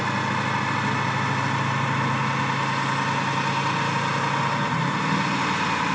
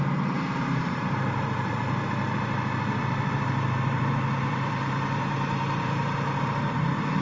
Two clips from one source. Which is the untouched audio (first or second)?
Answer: first